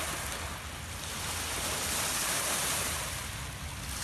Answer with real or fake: real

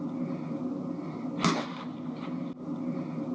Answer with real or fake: real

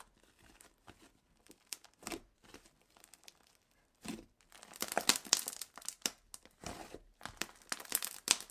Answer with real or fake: real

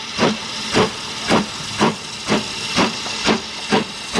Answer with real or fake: real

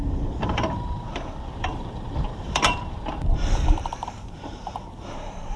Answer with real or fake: fake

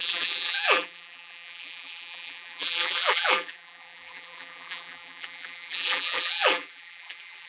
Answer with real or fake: fake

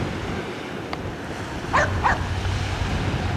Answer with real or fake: real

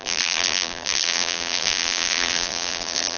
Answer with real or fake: fake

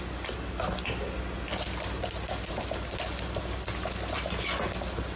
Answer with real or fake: real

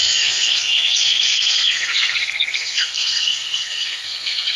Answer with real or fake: fake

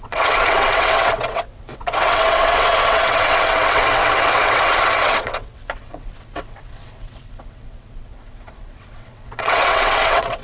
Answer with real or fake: fake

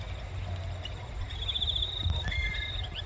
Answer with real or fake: real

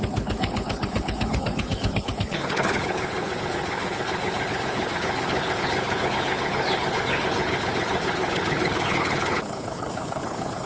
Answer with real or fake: fake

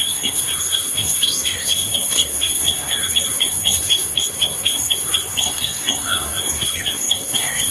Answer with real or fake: fake